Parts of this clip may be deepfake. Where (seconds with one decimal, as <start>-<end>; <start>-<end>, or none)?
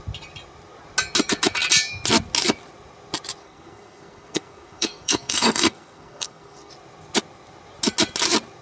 3.4-6.7